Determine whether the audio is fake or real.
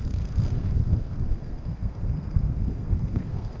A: fake